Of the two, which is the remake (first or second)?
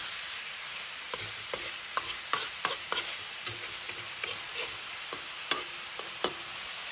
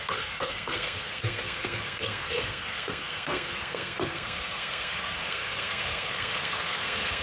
second